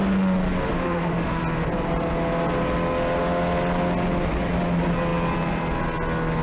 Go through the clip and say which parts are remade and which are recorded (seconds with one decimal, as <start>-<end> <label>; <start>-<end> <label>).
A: 0.0-0.7 recorded; 0.7-1.4 remade; 1.4-6.4 recorded